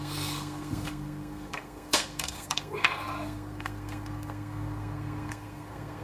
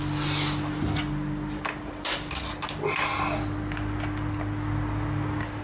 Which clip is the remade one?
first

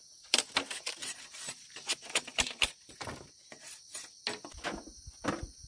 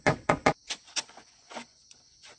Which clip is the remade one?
second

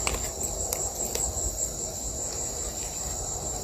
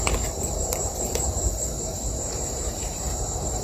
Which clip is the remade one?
second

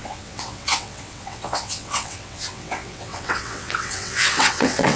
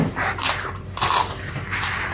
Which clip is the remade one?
first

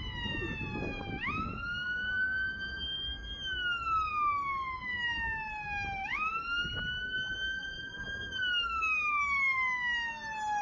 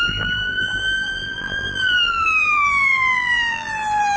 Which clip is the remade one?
second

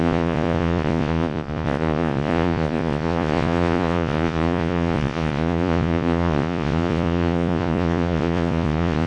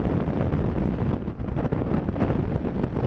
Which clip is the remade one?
first